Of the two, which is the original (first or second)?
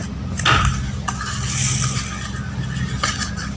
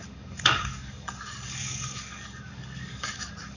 first